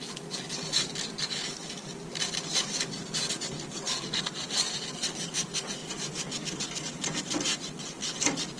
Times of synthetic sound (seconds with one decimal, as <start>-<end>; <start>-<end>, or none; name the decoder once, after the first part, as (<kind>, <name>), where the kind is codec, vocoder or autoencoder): none